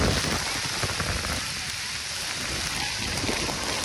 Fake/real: real